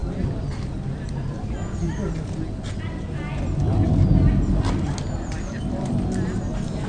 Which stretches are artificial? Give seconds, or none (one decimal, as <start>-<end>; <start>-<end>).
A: none